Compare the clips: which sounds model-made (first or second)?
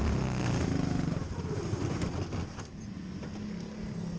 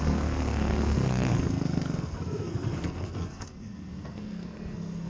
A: second